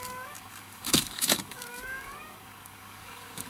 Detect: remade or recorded remade